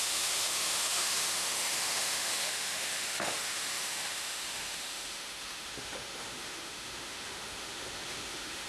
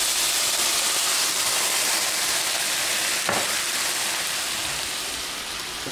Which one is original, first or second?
second